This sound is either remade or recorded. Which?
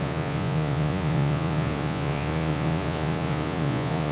remade